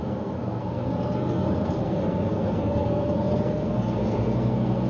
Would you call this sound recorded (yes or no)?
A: no